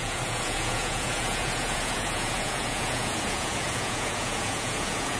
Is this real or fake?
fake